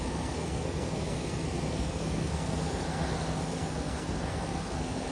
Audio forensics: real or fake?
fake